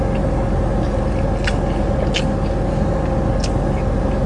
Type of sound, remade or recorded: recorded